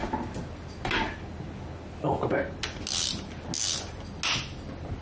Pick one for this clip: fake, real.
real